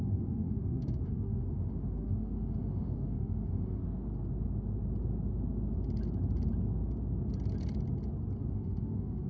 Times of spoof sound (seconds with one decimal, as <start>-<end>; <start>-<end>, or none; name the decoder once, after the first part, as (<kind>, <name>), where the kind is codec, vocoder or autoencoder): 0.0-3.8 (autoencoder, DAC-VAE); 8.4-9.3